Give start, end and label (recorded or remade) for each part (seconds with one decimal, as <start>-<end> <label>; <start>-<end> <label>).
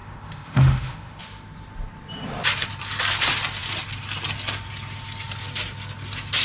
0.0-1.2 remade; 1.2-6.4 recorded